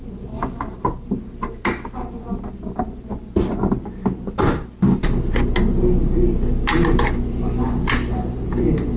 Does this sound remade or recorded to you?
recorded